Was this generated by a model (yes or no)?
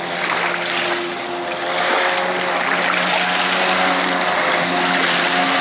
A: no